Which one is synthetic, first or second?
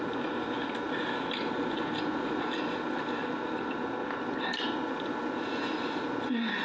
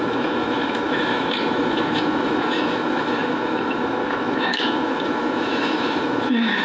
second